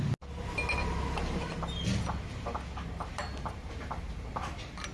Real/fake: real